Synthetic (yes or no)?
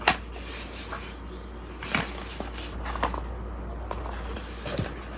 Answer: no